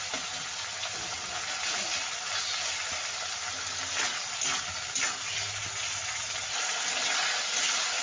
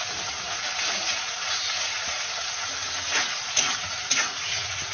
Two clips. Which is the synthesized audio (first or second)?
second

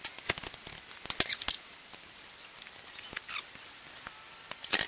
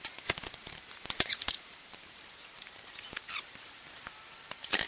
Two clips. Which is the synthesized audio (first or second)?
second